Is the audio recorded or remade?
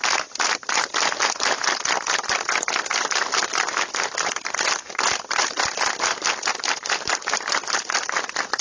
recorded